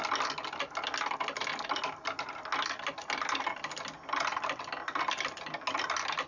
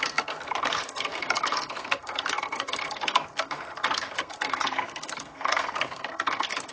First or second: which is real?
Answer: first